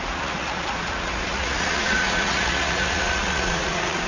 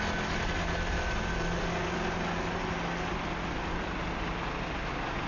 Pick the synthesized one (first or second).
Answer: first